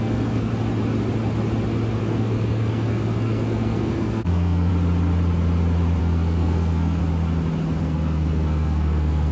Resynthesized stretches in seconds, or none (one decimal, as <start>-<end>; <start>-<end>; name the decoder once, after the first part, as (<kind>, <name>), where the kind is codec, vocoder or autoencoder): 0.0-0.5 (codec, SNAC); 2.0-4.7; 6.0-7.0; 7.8-9.3